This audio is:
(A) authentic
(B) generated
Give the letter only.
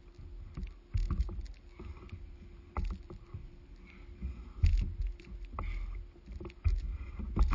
A